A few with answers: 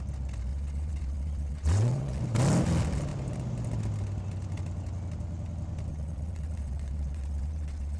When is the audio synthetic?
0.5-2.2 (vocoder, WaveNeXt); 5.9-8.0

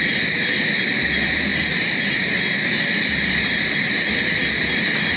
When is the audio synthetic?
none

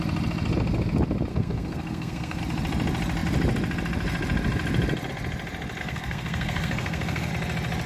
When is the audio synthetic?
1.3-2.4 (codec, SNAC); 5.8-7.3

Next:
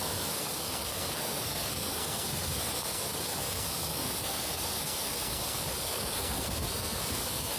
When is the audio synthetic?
0.0-7.6 (codec, SNAC)

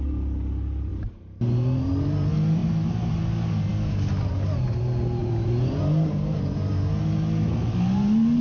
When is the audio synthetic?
0.9-1.9 (vocoder, BigVGAN v2); 5.2-5.8